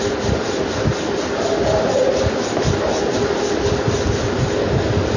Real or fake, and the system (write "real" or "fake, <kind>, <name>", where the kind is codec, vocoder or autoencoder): real